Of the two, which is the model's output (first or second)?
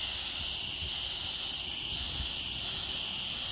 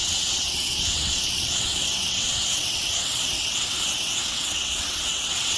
second